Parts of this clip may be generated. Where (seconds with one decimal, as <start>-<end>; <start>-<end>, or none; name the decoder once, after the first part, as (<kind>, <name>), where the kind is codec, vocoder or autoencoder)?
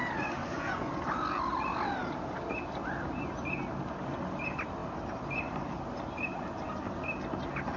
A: 0.4-0.9 (vocoder, Vocos)